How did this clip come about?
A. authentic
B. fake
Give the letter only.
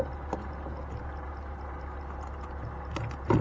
A